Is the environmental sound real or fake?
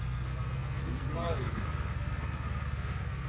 fake